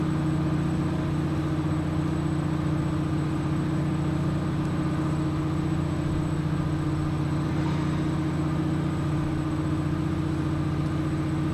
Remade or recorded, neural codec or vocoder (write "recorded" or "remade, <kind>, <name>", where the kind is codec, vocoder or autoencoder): recorded